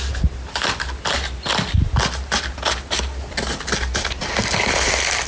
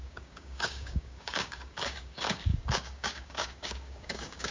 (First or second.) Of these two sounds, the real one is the first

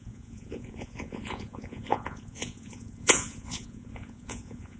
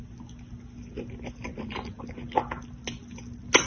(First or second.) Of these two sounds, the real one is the second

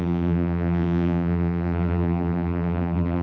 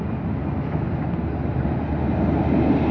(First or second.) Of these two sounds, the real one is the second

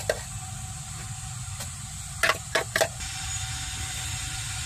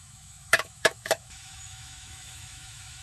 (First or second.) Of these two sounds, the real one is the first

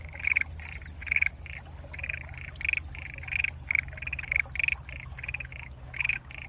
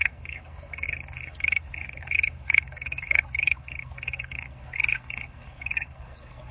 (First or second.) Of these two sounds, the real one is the first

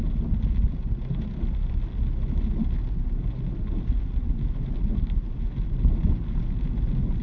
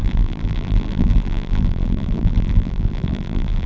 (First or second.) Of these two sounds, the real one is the first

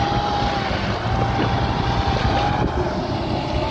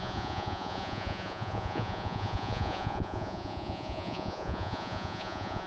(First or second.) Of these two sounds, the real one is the first